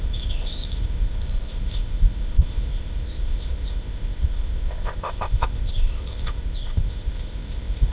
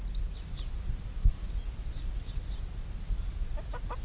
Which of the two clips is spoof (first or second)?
first